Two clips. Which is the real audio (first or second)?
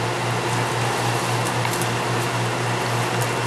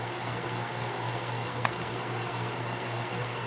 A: first